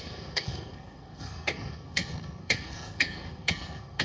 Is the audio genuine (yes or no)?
no